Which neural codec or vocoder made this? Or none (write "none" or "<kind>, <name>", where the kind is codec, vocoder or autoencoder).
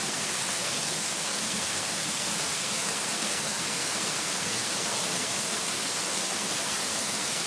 codec, SNAC